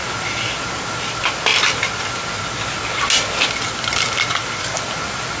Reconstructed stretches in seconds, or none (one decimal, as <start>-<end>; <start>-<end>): none